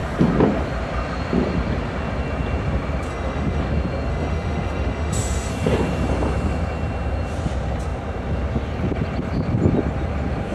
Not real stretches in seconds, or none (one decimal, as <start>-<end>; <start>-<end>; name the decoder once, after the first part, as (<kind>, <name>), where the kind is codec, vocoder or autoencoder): 3.1-3.6 (autoencoder, DAC-VAE); 4.1-5.5